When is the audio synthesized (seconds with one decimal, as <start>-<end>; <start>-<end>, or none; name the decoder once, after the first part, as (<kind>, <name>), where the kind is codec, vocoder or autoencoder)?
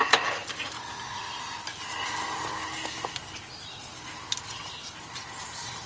none